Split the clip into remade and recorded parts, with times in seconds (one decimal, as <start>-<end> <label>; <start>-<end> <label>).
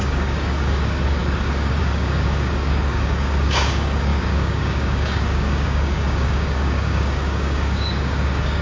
0.0-8.6 remade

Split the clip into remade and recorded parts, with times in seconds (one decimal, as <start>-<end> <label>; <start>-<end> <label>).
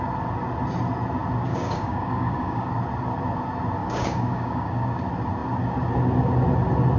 0.0-1.5 recorded; 1.5-2.7 remade; 2.7-3.8 recorded; 3.8-5.0 remade; 5.0-7.0 recorded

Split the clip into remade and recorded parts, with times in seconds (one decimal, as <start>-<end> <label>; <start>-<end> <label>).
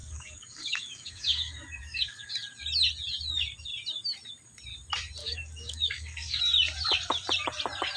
0.0-2.3 remade; 2.3-5.2 recorded; 5.2-6.4 remade; 6.4-8.0 recorded